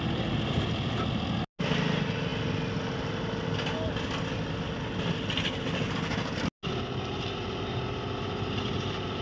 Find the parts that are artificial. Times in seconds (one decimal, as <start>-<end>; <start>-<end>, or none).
none